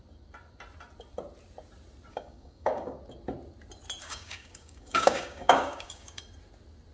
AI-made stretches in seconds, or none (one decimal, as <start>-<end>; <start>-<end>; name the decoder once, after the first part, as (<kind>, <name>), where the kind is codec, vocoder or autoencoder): 2.1-3.0 (codec, DAC); 4.0-6.2